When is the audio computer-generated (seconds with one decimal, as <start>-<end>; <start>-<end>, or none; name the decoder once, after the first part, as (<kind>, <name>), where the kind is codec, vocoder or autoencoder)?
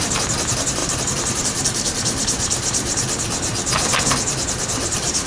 0.0-5.3 (vocoder, BigVGAN v2)